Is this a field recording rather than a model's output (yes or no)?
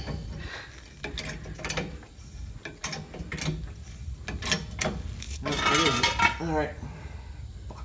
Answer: yes